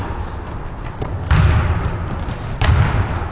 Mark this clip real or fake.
real